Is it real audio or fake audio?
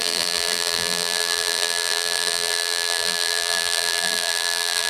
fake